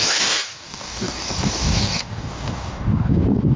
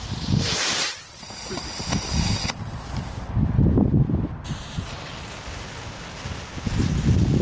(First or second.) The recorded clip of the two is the second